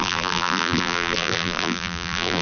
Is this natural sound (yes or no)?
no